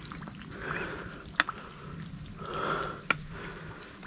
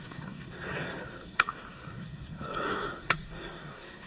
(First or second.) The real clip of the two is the first